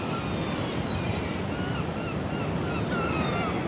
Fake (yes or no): no